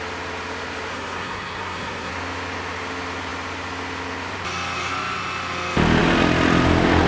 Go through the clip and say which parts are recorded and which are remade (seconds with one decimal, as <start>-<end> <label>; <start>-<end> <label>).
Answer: 0.0-0.9 recorded; 0.9-2.1 remade; 2.1-7.1 recorded

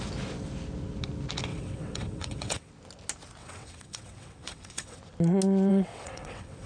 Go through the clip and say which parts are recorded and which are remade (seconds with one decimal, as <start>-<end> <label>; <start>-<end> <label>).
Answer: 0.0-1.5 recorded; 1.5-2.7 remade; 2.7-3.4 recorded; 3.4-5.0 remade; 5.0-5.7 recorded; 5.7-6.7 remade

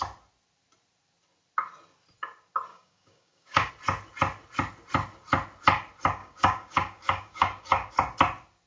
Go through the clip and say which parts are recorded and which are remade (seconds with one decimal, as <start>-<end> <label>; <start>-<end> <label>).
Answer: 0.0-2.7 recorded; 2.7-3.7 remade; 3.7-6.2 recorded; 6.2-7.9 remade; 7.9-8.7 recorded

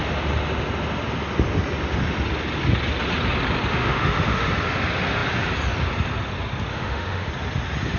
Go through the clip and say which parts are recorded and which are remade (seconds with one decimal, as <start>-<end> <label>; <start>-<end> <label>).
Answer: 0.0-3.7 recorded; 3.7-4.5 remade; 4.5-6.7 recorded; 6.7-7.3 remade; 7.3-8.0 recorded